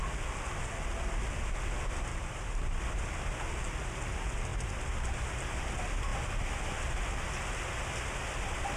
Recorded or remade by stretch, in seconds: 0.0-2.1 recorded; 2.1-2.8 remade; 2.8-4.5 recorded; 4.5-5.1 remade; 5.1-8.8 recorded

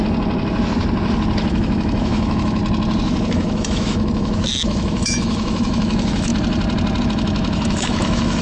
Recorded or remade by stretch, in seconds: 0.0-1.5 recorded; 1.5-2.6 remade; 2.6-3.3 recorded; 3.3-6.3 remade; 6.3-7.0 recorded; 7.0-8.4 remade

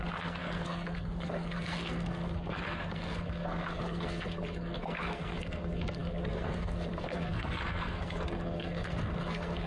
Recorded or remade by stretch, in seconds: 0.0-9.7 remade

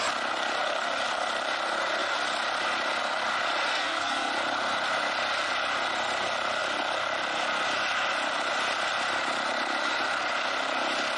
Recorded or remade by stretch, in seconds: 0.0-3.7 recorded; 3.7-4.3 remade; 4.3-11.2 recorded

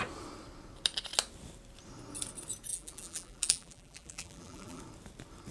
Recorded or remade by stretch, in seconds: 0.0-2.7 recorded; 2.7-4.8 remade; 4.8-5.5 recorded

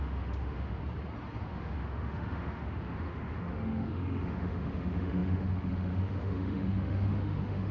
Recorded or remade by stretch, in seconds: 0.0-0.8 remade; 0.8-1.5 recorded; 1.5-7.7 remade